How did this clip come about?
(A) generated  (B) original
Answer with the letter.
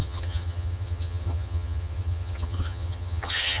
A